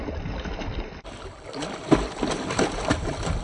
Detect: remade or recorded recorded